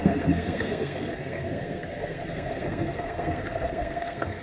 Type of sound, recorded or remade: remade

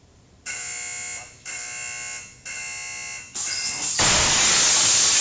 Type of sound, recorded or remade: recorded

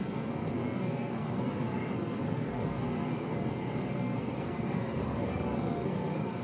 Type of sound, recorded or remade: remade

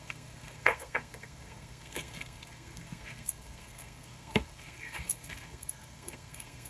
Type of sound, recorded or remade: remade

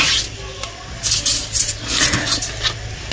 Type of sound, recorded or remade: recorded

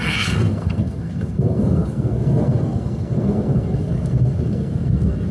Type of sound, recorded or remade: remade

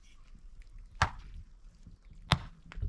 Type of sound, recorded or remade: recorded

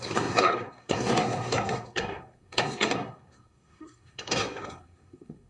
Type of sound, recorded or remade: remade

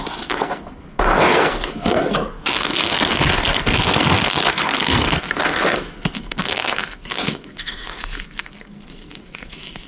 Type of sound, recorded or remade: remade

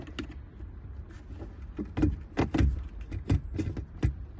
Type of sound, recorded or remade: recorded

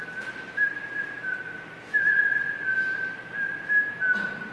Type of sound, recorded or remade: recorded